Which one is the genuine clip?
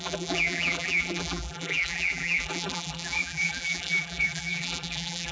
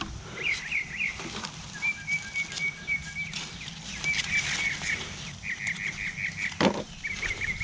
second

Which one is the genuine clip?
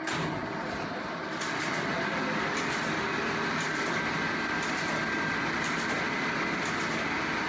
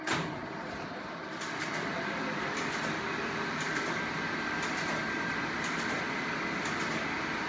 first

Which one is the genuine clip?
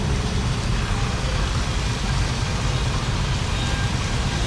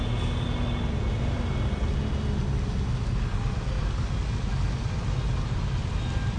second